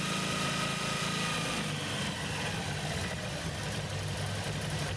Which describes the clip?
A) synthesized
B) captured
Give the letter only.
B